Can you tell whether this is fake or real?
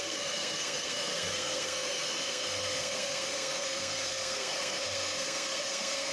fake